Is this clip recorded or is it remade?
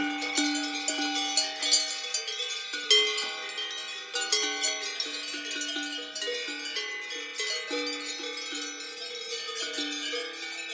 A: recorded